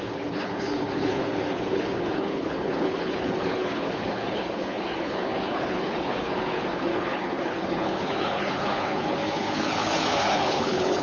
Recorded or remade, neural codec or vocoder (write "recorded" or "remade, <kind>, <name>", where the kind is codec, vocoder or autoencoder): remade, codec, HILCodec